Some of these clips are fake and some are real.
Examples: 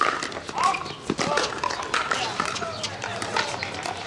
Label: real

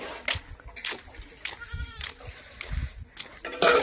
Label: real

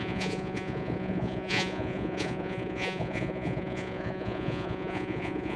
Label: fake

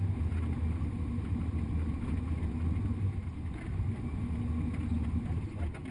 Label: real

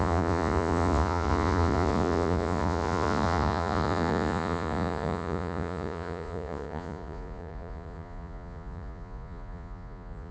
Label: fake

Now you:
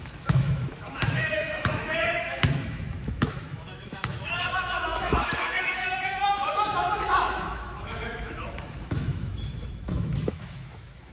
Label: fake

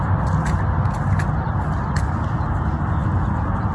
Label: real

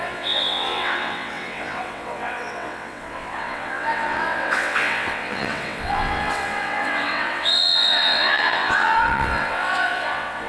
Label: fake